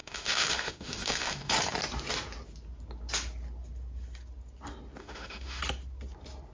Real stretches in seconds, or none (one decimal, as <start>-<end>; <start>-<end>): 1.5-5.0; 5.6-6.5